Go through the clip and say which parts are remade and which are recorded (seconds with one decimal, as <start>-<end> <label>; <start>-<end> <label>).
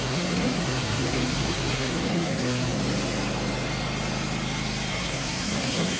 0.0-2.8 remade; 2.8-4.9 recorded; 4.9-6.0 remade